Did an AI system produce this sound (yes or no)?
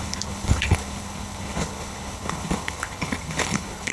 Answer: yes